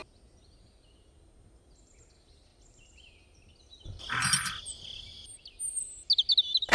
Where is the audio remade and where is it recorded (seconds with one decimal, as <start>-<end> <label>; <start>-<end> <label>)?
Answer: 0.0-6.7 recorded